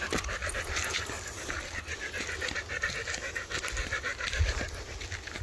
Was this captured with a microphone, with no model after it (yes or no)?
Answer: yes